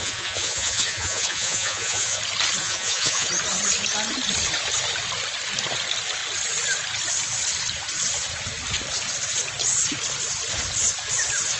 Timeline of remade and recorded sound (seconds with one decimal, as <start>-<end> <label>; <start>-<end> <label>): 0.0-2.2 remade; 2.2-2.6 recorded; 2.6-3.3 remade; 3.3-11.6 recorded